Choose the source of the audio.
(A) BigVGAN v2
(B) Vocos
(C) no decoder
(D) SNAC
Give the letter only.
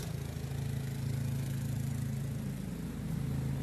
C